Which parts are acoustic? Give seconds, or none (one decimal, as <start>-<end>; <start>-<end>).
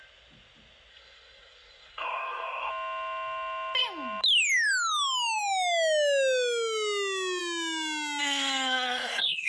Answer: 0.0-0.9; 2.7-8.2